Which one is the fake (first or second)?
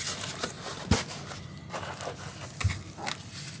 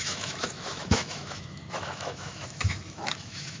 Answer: second